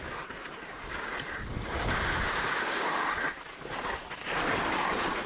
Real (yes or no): yes